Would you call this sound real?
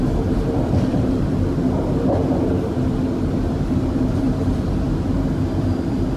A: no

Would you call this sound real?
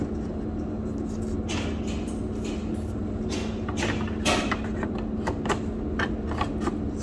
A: yes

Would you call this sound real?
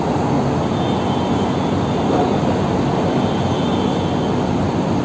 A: yes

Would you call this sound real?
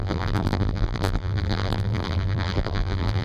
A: no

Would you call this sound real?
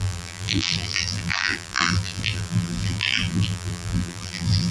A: no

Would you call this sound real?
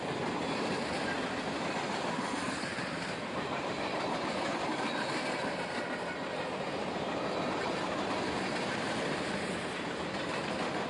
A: no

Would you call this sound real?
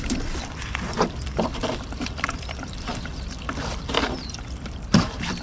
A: no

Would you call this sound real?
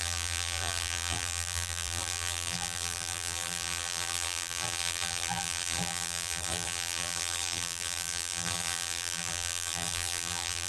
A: no